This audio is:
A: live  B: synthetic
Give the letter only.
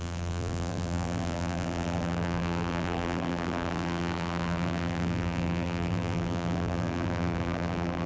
B